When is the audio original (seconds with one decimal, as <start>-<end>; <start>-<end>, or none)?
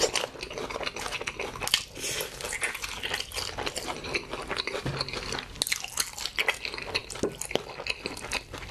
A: 0.0-8.7